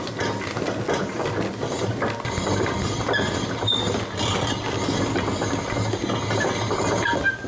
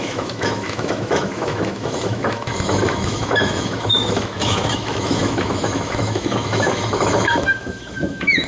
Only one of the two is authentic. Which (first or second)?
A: first